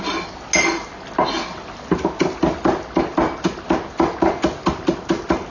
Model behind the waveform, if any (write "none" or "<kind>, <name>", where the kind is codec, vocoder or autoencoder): none